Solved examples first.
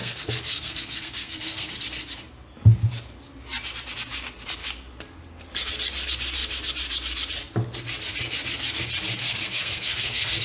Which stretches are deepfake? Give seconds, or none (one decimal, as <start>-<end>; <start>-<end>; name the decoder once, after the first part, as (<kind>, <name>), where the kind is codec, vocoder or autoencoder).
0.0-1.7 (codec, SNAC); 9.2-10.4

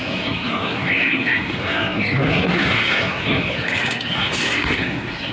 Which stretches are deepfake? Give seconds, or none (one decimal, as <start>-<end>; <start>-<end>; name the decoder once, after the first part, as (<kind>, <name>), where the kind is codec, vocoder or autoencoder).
0.0-5.3 (codec, SNAC)

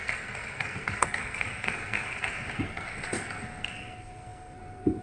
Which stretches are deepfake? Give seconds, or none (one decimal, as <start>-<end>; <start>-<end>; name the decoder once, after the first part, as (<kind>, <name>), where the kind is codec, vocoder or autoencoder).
0.0-5.0 (codec, SNAC)

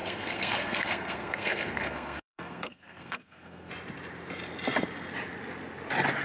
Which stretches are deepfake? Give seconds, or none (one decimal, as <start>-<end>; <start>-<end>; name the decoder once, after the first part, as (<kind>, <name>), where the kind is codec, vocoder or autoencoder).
0.0-3.7 (codec, SNAC)

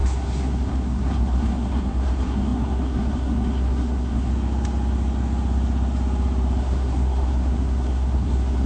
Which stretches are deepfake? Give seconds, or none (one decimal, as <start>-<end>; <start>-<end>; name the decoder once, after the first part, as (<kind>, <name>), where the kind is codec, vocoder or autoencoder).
0.0-4.3 (codec, SNAC); 6.6-8.7

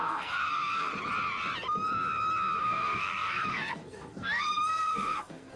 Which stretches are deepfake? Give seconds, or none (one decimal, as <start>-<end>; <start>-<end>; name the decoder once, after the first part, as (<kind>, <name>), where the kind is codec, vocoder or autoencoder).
0.0-0.9 (codec, SNAC); 2.6-5.6

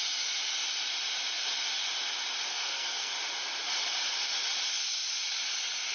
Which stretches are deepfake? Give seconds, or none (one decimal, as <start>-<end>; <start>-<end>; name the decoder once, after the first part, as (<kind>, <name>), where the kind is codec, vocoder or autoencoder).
2.5-3.1 (codec, SNAC)

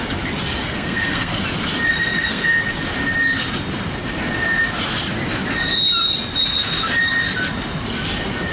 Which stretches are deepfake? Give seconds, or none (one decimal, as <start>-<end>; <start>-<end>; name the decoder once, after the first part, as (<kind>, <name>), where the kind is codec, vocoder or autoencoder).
0.6-1.4 (codec, SNAC); 1.9-2.6